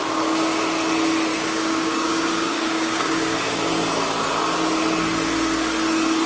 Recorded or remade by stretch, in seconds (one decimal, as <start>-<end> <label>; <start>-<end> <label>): 0.0-1.3 recorded; 1.3-3.7 remade; 3.7-6.3 recorded